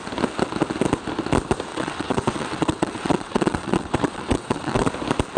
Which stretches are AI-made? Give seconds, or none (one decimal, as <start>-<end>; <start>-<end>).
1.7-4.9